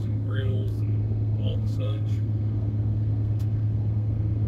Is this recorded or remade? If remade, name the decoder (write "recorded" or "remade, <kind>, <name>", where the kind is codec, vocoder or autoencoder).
remade, codec, SNAC